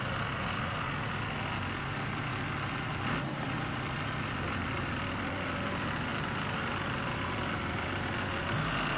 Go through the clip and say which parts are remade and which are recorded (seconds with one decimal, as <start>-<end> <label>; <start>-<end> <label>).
0.0-9.0 recorded